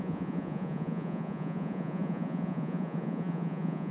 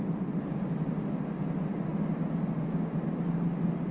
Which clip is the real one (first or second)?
second